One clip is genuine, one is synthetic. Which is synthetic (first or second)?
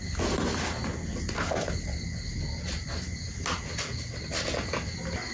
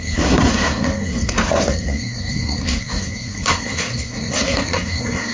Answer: second